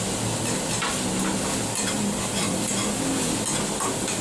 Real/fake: real